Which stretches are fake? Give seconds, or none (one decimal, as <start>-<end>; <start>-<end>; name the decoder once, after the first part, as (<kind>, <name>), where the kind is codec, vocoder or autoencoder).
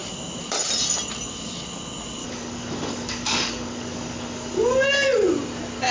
2.2-4.9 (codec, DAC)